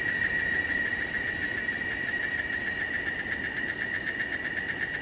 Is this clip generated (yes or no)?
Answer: no